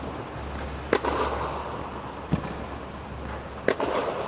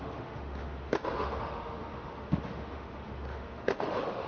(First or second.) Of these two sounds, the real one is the first